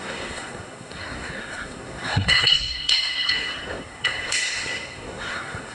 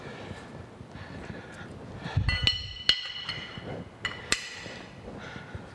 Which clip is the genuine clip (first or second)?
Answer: second